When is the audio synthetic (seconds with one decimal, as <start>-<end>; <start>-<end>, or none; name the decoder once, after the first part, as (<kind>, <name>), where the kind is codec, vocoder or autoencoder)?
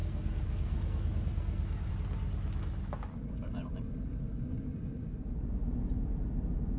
0.0-1.9 (codec, SNAC)